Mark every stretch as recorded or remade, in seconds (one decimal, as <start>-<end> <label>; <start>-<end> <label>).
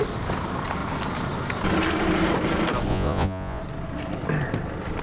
0.0-2.9 recorded; 2.9-3.6 remade; 3.6-5.0 recorded